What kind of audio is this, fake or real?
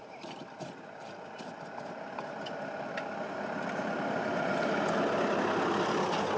real